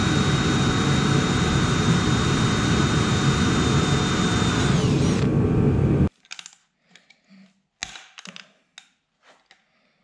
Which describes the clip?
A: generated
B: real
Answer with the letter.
B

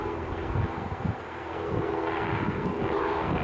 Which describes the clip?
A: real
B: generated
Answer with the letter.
B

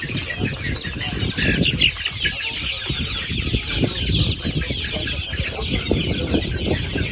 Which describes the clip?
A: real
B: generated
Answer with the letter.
A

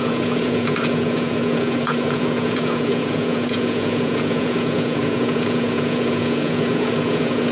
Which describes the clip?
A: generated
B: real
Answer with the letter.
A